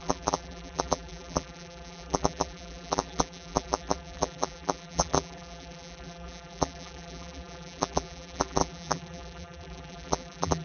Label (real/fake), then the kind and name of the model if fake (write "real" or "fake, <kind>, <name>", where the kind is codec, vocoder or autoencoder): fake, vocoder, BigVGAN v2